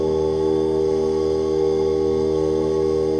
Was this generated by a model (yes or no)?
yes